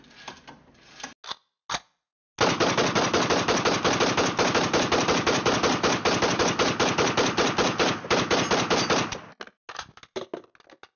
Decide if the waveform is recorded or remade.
recorded